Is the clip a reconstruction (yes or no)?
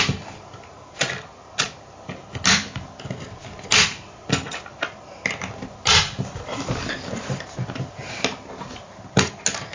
no